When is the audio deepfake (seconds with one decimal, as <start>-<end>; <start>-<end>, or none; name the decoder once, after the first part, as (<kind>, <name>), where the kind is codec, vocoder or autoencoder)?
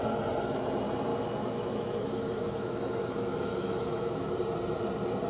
1.1-4.3 (autoencoder, DAC-VAE)